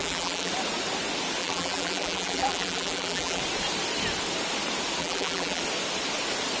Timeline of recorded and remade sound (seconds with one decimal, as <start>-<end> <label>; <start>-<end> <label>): 0.0-0.5 remade; 0.5-1.4 recorded; 1.4-3.4 remade; 3.4-5.0 recorded; 5.0-5.6 remade; 5.6-6.6 recorded